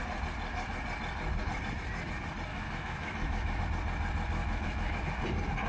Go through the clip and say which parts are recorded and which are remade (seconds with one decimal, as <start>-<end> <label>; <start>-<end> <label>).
0.0-2.5 recorded; 2.5-3.6 remade; 3.6-4.4 recorded; 4.4-5.0 remade; 5.0-5.7 recorded